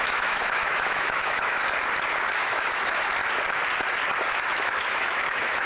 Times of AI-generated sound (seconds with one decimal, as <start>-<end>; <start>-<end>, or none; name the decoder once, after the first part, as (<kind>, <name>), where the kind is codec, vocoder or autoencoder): 0.0-1.6 (autoencoder, DAC-VAE); 2.3-3.2; 4.3-5.7